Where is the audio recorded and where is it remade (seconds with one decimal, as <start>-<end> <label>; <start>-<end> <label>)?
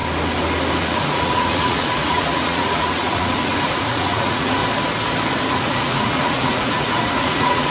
0.0-0.8 recorded; 0.8-4.6 remade; 4.6-5.5 recorded; 5.5-7.7 remade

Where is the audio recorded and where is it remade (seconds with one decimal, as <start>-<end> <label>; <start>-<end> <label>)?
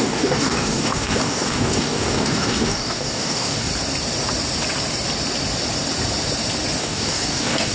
0.0-3.7 remade; 3.7-6.8 recorded; 6.8-7.7 remade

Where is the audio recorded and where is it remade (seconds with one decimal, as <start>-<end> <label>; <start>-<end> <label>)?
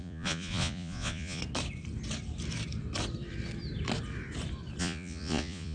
0.0-1.4 remade; 1.4-4.8 recorded; 4.8-5.7 remade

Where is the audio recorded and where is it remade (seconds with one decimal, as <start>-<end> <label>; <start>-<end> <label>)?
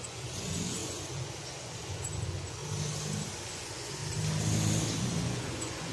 0.0-2.6 remade; 2.6-3.5 recorded; 3.5-4.0 remade; 4.0-5.0 recorded; 5.0-5.9 remade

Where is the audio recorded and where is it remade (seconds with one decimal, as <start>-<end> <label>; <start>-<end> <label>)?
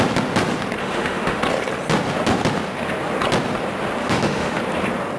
0.0-0.8 recorded; 0.8-1.4 remade; 1.4-4.0 recorded; 4.0-4.6 remade; 4.6-5.2 recorded